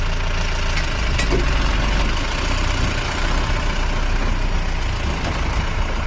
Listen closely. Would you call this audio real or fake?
real